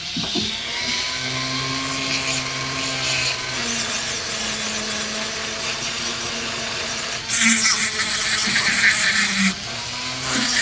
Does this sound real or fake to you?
real